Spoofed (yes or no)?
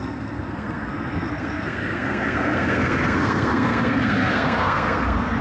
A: yes